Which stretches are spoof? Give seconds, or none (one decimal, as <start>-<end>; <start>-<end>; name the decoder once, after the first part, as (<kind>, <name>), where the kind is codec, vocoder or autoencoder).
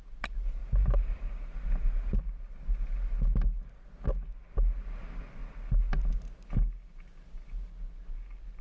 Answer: 0.6-2.2 (vocoder, BigVGAN v2)